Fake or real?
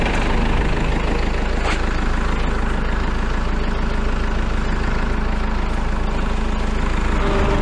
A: real